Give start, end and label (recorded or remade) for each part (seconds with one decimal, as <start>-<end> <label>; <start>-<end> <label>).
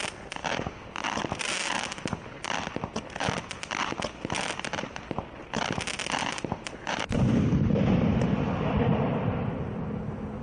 0.0-10.4 recorded